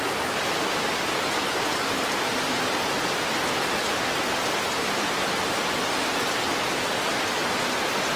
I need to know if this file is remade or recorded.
recorded